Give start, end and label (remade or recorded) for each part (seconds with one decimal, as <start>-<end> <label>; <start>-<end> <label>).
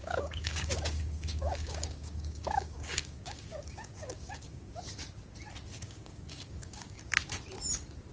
0.0-4.7 remade; 4.7-5.7 recorded; 5.7-7.0 remade; 7.0-8.1 recorded